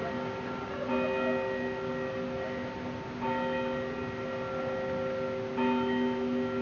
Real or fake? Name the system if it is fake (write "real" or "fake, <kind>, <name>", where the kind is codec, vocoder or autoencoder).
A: real